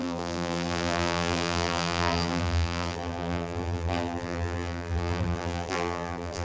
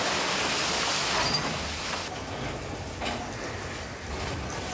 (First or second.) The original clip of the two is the second